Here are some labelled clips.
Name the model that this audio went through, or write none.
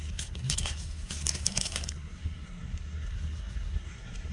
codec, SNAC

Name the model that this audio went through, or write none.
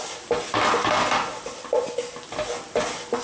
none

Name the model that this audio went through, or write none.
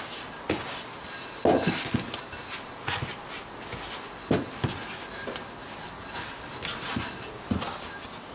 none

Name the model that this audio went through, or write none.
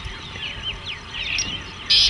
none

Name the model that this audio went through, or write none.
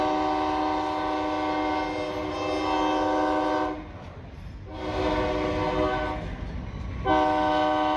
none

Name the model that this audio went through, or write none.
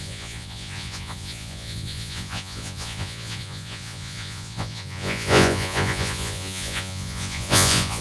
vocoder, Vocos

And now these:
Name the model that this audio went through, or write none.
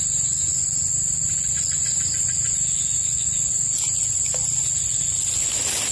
none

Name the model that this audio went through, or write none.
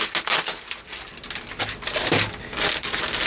none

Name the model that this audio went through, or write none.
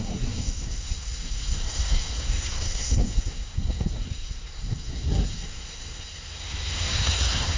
codec, SNAC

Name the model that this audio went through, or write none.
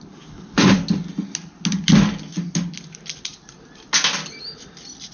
none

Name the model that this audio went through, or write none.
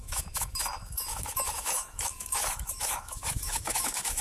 autoencoder, DAC-VAE